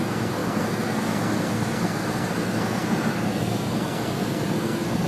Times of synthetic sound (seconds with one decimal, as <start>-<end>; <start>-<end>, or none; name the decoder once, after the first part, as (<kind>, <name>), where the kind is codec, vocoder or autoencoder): 0.0-5.1 (codec, SNAC)